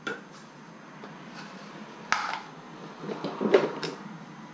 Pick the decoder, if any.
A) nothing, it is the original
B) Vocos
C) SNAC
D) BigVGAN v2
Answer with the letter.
A